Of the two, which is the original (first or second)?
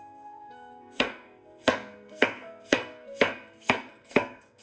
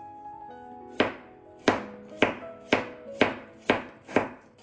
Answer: second